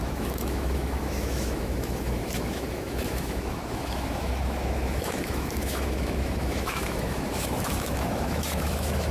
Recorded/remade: remade